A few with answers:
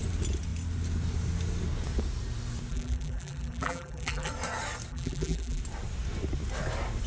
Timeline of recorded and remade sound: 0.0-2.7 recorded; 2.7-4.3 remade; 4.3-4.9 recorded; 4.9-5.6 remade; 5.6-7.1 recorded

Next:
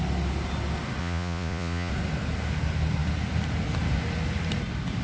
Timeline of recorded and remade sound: 0.0-1.0 recorded; 1.0-1.9 remade; 1.9-5.0 recorded

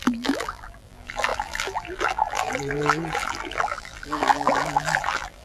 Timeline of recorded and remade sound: 0.0-5.4 remade

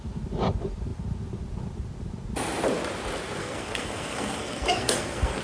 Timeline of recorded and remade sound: 0.0-3.4 recorded; 3.4-5.4 remade

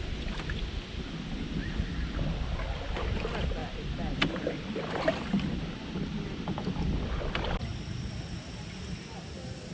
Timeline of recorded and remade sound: 0.0-9.7 recorded

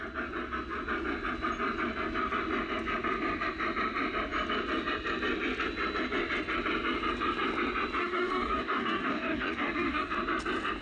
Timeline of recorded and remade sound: 0.0-8.0 recorded; 8.0-10.1 remade; 10.1-10.8 recorded

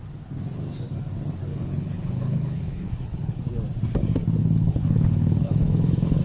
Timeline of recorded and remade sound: 0.0-1.5 recorded; 1.5-3.4 remade; 3.4-4.4 recorded; 4.4-6.2 remade

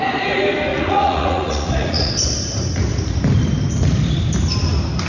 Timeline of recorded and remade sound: 0.0-0.7 recorded; 0.7-2.1 remade; 2.1-5.1 recorded